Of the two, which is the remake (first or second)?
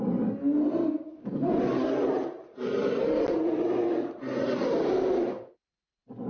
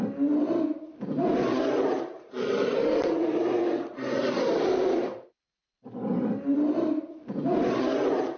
second